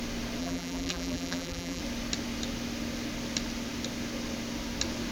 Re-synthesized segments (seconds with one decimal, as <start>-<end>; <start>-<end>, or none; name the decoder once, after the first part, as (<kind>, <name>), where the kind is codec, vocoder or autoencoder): 0.4-1.8 (vocoder, BigVGAN v2)